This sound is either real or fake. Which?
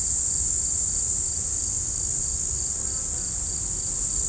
real